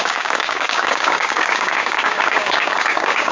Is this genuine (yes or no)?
no